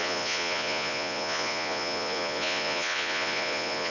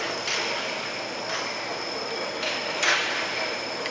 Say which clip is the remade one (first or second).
first